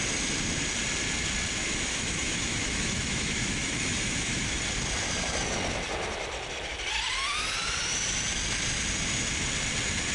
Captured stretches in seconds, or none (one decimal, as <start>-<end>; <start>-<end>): 0.0-1.6; 4.6-10.1